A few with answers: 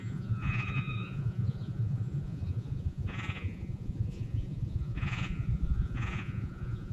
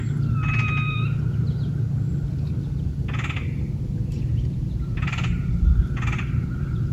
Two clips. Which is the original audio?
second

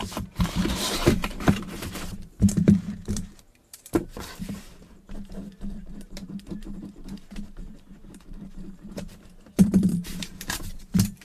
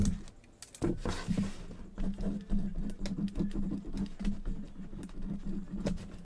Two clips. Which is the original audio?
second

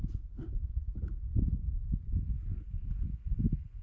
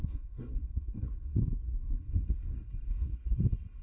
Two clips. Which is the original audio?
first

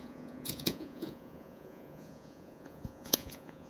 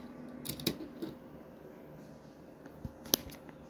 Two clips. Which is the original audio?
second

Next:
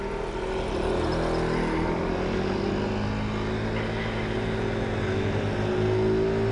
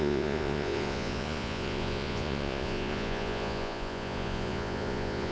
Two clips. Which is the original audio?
first